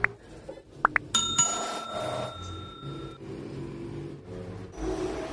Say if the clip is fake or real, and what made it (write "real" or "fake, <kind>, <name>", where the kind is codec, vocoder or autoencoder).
real